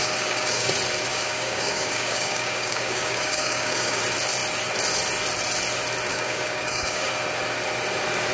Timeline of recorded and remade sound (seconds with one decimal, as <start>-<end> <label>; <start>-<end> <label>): 0.0-0.7 remade; 0.7-1.1 recorded; 1.1-4.0 remade; 4.0-6.1 recorded; 6.1-7.1 remade; 7.1-8.3 recorded